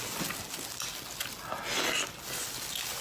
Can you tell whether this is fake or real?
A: real